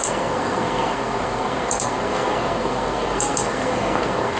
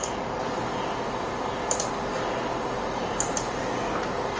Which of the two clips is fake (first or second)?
first